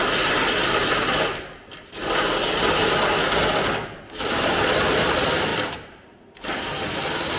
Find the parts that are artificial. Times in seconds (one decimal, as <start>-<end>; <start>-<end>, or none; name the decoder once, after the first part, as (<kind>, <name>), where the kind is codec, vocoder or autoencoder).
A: 5.5-6.7 (vocoder, BigVGAN v2)